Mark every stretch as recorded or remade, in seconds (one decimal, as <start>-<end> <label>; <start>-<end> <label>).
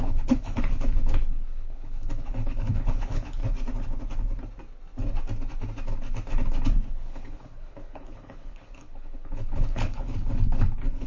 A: 0.0-3.4 remade; 3.4-6.9 recorded; 6.9-11.1 remade